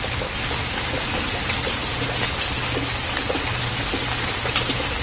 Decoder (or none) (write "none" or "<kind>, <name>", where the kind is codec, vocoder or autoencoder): none